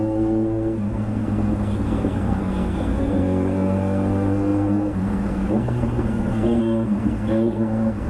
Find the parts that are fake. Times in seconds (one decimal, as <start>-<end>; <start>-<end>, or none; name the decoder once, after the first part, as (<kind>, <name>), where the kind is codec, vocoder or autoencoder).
0.0-8.1 (codec, SNAC)